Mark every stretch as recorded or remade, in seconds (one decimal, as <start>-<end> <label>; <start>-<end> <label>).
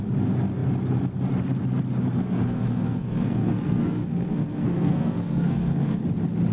0.0-2.2 recorded; 2.2-6.0 remade; 6.0-6.5 recorded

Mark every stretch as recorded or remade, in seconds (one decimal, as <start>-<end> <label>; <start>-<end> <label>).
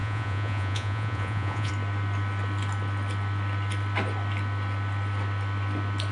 0.0-1.7 remade; 1.7-6.1 recorded